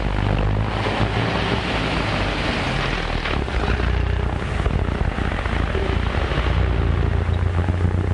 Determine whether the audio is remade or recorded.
recorded